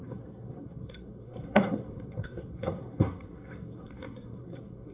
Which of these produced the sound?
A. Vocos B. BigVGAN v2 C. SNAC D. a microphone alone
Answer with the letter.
C